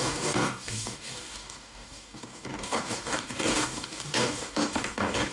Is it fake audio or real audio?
fake